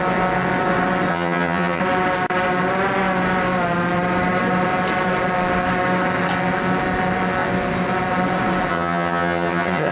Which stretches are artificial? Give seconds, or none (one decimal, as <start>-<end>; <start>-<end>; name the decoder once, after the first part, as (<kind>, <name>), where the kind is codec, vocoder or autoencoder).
1.1-1.8 (vocoder, HiFi-GAN); 8.7-9.9